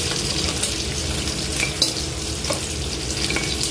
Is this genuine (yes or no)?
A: yes